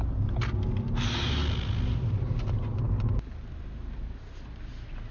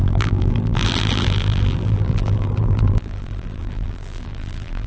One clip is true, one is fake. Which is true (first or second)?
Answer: first